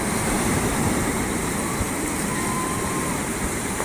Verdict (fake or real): fake